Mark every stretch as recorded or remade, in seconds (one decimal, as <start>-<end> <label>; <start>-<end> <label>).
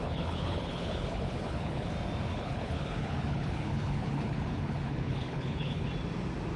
0.0-1.9 remade; 1.9-2.3 recorded; 2.3-5.9 remade; 5.9-6.6 recorded